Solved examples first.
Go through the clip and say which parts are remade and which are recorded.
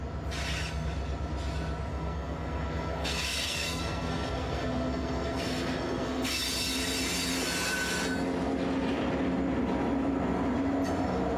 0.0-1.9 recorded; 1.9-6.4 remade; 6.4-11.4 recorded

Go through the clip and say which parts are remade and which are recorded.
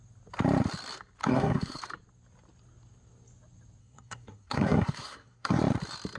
0.0-1.2 recorded; 1.2-1.8 remade; 1.8-3.8 recorded; 3.8-5.6 remade; 5.6-6.2 recorded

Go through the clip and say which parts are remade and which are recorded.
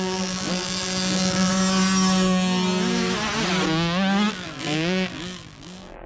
0.0-1.5 remade; 1.5-4.3 recorded; 4.3-6.1 remade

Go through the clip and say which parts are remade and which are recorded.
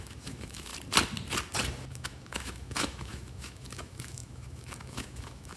0.0-0.7 remade; 0.7-1.9 recorded; 1.9-5.6 remade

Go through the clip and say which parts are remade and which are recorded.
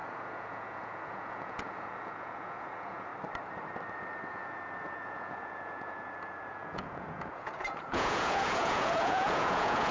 0.0-3.1 remade; 3.1-4.3 recorded; 4.3-9.9 remade